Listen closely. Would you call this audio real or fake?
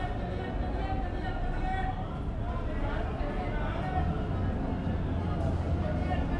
real